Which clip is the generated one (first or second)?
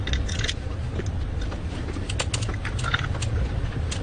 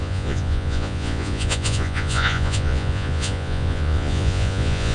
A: second